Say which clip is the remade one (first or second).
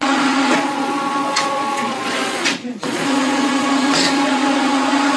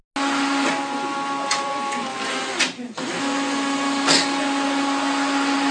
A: first